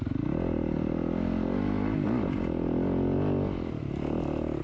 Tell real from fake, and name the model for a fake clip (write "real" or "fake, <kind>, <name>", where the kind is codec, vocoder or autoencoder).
real